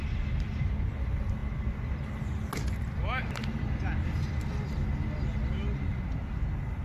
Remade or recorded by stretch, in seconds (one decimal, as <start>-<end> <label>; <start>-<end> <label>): 0.0-6.8 recorded